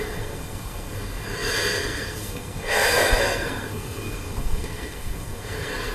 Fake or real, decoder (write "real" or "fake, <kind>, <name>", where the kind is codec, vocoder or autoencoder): fake, codec, SNAC